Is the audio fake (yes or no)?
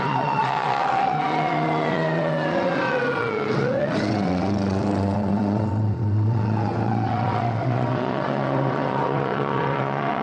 yes